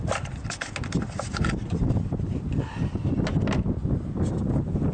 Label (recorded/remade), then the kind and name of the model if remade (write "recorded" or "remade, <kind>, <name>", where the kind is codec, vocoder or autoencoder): recorded